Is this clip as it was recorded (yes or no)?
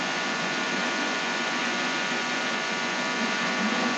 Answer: no